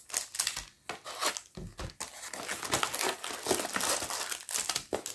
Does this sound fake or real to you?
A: real